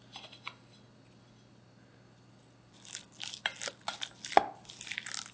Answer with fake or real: real